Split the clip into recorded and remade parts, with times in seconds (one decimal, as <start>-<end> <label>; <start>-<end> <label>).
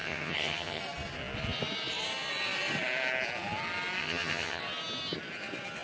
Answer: 0.0-0.8 remade; 0.8-4.0 recorded; 4.0-4.6 remade; 4.6-5.8 recorded